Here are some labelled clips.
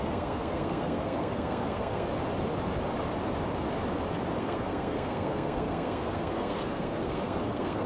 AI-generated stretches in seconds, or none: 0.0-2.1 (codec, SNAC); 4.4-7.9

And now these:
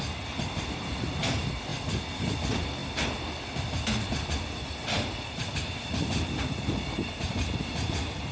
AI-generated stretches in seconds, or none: 0.0-2.8 (vocoder, BigVGAN v2); 4.5-8.3

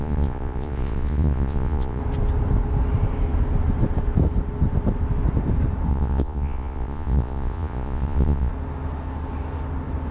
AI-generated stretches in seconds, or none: 0.0-2.0 (vocoder, Vocos); 5.9-8.5

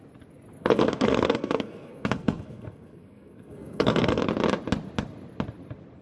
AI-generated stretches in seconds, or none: 0.6-4.2 (codec, SNAC)

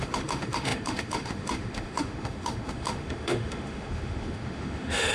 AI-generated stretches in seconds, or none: 0.0-5.1 (autoencoder, DAC-VAE)

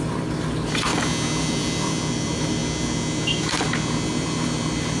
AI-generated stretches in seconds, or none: 0.0-0.9 (vocoder, BigVGAN v2); 1.4-2.6; 4.2-5.0

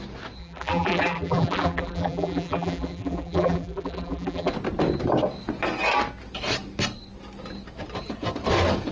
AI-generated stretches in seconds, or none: 0.4-4.5 (vocoder, BigVGAN v2)

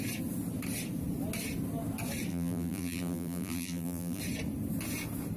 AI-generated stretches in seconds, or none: 2.3-4.2 (vocoder, BigVGAN v2)